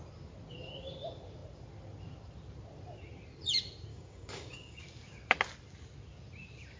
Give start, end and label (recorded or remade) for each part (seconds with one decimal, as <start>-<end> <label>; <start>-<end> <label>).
0.0-3.9 recorded; 3.9-4.8 remade; 4.8-6.8 recorded